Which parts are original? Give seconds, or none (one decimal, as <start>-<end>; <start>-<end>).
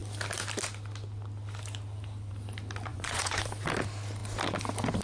0.0-2.9; 3.4-5.0